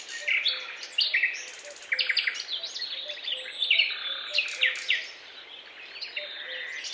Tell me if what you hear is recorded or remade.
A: recorded